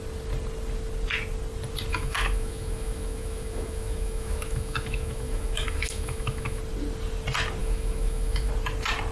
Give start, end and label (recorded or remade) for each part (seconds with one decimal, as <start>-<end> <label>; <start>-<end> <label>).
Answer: 0.0-1.9 recorded; 1.9-6.6 remade; 6.6-7.6 recorded; 7.6-8.5 remade; 8.5-9.1 recorded